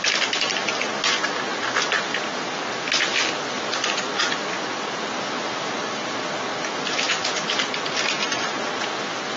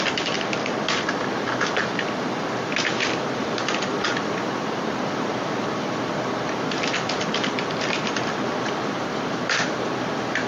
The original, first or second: first